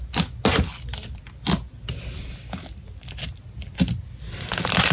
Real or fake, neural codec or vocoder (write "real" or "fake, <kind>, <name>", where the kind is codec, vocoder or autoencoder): real